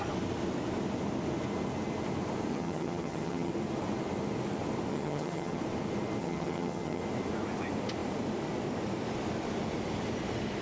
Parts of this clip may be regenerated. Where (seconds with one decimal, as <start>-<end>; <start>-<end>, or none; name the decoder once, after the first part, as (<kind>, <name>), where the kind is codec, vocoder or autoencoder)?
2.5-3.5 (vocoder, HiFi-GAN); 4.9-5.6; 6.2-7.0